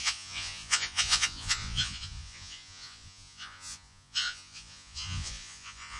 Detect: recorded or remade remade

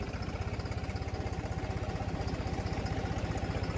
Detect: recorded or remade recorded